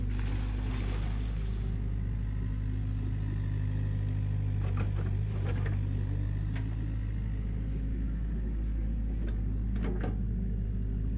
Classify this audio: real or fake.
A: real